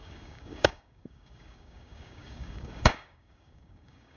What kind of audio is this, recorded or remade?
remade